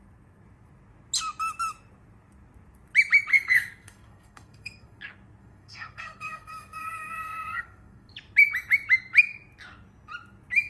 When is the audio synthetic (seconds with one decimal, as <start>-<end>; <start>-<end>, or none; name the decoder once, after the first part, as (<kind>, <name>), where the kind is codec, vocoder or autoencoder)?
3.3-5.0 (codec, SNAC); 5.4-8.1